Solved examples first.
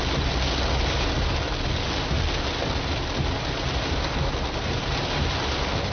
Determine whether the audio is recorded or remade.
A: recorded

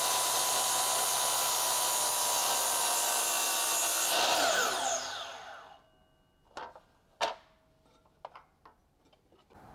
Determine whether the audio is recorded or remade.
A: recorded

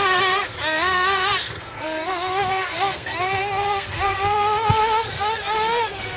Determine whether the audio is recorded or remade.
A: remade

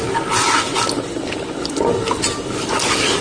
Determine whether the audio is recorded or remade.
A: recorded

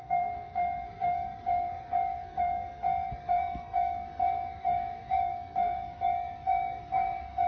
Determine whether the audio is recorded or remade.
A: remade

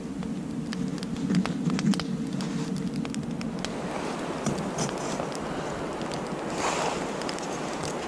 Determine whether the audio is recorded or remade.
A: recorded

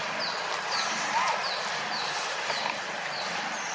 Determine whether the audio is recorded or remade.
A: recorded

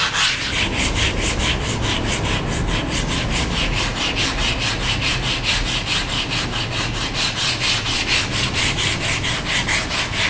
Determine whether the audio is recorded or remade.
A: recorded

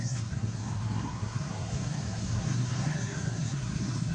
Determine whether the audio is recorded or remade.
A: remade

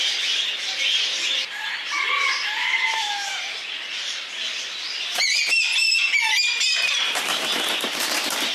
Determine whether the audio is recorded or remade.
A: recorded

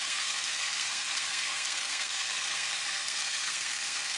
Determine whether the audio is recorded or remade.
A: remade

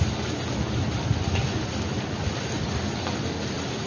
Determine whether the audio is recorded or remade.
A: recorded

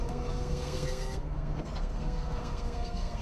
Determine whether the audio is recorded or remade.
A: remade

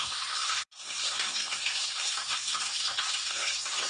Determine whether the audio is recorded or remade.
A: remade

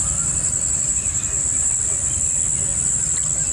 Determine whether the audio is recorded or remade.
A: recorded